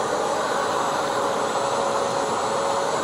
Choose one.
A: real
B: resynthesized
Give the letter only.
A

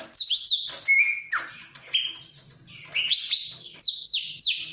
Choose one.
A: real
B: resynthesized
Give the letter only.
A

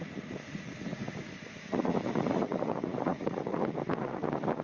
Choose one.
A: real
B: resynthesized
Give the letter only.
B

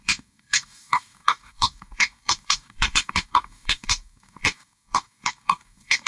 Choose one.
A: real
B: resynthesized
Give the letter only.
B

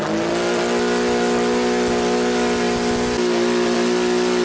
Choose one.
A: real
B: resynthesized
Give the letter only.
A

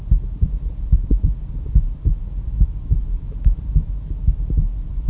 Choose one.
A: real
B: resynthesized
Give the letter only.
A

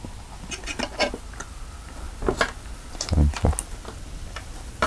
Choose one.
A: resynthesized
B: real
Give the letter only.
B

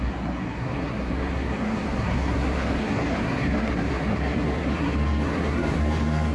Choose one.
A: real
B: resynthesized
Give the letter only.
B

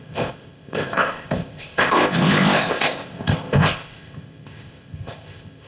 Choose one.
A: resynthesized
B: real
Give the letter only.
A